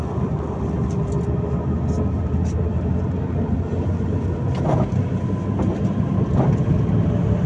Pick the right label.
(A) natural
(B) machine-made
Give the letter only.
A